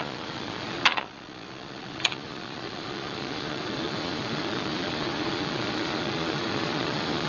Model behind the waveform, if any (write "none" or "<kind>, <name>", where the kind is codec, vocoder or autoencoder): vocoder, Vocos